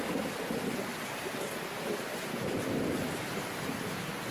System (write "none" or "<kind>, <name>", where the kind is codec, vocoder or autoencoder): none